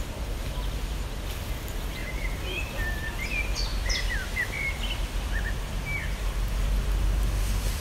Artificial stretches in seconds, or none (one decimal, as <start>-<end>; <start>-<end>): 2.0-2.7